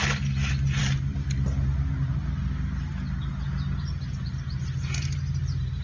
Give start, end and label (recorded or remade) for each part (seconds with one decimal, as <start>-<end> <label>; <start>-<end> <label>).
0.0-5.8 recorded